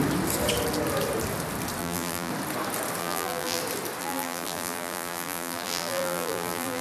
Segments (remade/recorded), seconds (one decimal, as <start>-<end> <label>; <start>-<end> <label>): 0.0-1.8 recorded; 1.8-2.3 remade; 2.3-3.0 recorded; 3.0-3.6 remade; 3.6-4.0 recorded; 4.0-6.8 remade